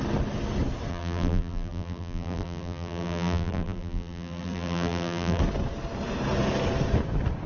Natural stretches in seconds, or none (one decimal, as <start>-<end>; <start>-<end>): 0.0-0.9; 5.4-7.5